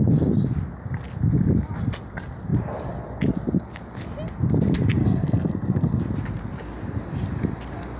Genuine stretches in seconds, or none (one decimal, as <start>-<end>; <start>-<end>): 0.0-5.0; 6.0-8.0